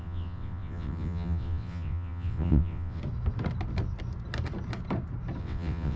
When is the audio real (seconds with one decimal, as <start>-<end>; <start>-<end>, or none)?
3.0-5.4